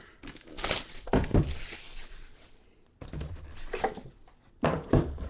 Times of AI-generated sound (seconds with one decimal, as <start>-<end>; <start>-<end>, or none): none